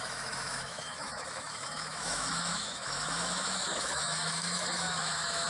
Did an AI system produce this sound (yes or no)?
yes